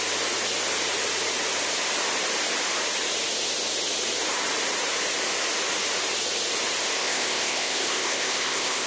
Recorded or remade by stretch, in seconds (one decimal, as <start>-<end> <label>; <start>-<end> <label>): 0.0-7.0 recorded; 7.0-8.9 remade